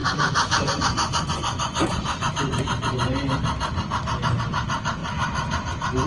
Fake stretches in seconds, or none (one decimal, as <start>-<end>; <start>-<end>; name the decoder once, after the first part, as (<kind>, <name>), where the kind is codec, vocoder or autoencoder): 0.0-2.3 (vocoder, Vocos)